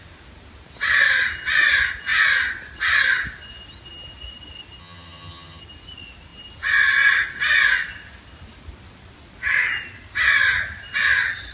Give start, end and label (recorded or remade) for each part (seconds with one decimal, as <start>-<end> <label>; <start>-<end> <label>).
0.0-4.8 recorded; 4.8-5.6 remade; 5.6-11.5 recorded